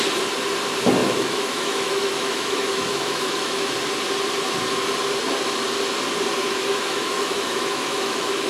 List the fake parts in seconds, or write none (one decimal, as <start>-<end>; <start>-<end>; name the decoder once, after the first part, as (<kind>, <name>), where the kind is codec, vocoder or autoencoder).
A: 1.0-3.7 (autoencoder, DAC-VAE); 6.4-8.5